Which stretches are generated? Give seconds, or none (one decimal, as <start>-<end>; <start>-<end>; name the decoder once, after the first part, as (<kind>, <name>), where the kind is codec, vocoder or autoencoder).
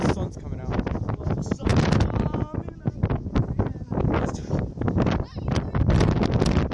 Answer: none